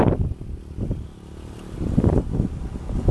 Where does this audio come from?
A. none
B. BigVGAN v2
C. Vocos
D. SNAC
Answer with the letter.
A